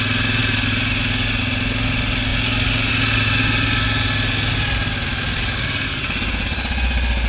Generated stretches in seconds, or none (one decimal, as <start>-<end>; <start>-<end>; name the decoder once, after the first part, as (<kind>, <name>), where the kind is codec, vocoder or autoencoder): none